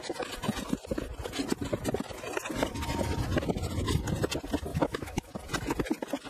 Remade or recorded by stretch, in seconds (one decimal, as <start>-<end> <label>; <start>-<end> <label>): 0.0-4.7 recorded; 4.7-5.3 remade; 5.3-6.3 recorded